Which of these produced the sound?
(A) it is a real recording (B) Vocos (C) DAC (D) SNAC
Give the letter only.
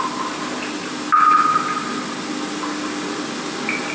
A